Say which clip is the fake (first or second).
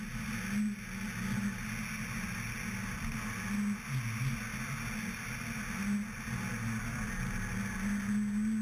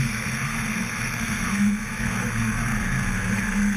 second